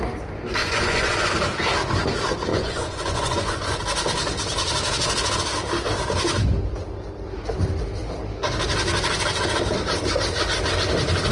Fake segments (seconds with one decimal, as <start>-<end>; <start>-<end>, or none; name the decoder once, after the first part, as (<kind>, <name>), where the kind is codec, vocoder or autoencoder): 0.6-1.3 (vocoder, Vocos); 2.5-3.8